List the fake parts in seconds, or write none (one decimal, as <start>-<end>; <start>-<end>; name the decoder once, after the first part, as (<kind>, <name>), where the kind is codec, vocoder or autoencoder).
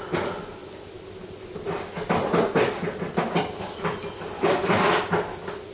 none